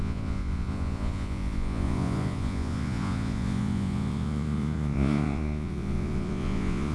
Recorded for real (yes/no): no